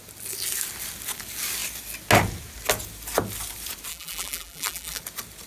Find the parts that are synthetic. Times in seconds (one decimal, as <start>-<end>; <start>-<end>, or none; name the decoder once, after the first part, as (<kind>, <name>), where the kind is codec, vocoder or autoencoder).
3.9-5.0 (vocoder, BigVGAN v2)